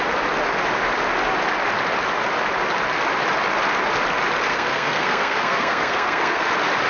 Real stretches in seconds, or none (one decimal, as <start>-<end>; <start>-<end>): 0.0-4.5; 6.5-6.9